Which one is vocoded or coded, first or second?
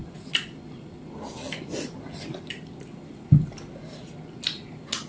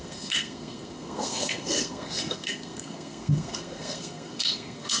second